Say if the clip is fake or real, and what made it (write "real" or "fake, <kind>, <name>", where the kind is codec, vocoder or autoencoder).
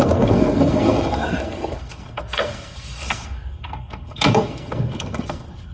fake, codec, SNAC